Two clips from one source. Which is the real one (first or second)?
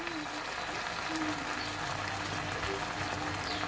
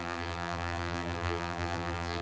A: first